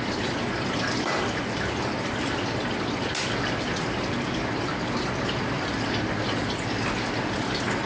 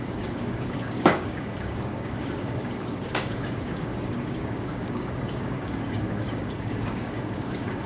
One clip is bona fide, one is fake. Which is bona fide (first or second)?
first